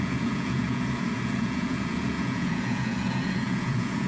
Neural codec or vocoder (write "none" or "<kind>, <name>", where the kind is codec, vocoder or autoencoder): vocoder, Vocos